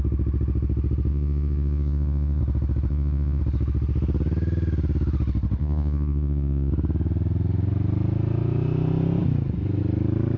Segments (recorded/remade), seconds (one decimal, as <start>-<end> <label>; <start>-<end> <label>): 0.0-1.1 recorded; 1.1-2.4 remade; 2.4-2.9 recorded; 2.9-3.4 remade; 3.4-5.6 recorded; 5.6-6.7 remade; 6.7-10.4 recorded